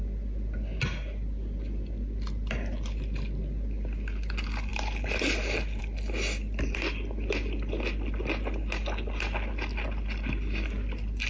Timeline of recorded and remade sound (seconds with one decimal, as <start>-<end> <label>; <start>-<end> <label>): 0.0-11.3 recorded